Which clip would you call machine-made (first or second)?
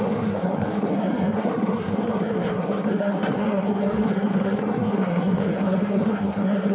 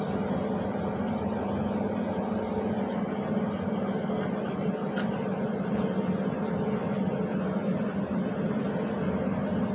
first